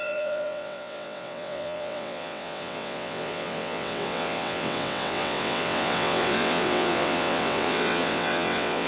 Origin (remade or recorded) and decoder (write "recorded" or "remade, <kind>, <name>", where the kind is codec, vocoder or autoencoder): remade, vocoder, WaveNeXt